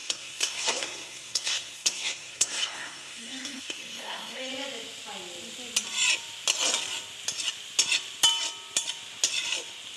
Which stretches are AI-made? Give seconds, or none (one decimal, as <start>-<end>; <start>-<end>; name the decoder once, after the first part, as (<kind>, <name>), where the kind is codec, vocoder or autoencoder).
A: 0.0-4.5 (codec, SNAC)